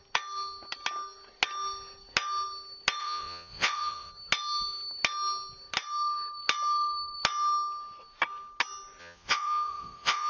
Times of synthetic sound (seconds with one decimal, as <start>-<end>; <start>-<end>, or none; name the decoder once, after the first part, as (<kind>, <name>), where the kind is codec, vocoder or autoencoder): 3.0-4.1 (vocoder, Vocos); 9.0-10.3